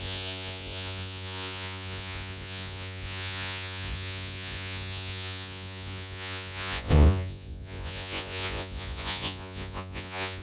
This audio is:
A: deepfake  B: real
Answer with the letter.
A